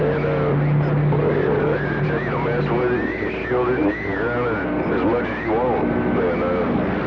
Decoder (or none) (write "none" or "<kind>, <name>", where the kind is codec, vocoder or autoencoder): none